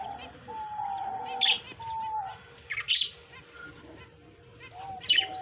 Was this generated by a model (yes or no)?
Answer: no